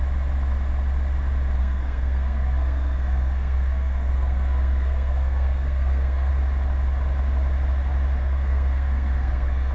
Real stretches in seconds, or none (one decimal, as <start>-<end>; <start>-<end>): 0.0-1.6; 6.3-8.2